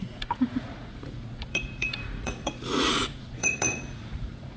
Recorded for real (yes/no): no